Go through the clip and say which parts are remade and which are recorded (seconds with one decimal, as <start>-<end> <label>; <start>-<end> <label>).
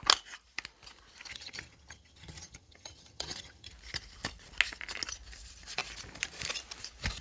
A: 0.0-1.3 recorded; 1.3-3.7 remade; 3.7-7.2 recorded